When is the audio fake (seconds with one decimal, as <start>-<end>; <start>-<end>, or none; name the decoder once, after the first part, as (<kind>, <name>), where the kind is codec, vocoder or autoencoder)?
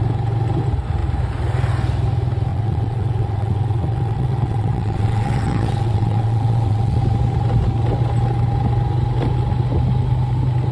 2.5-7.0 (vocoder, WaveNeXt)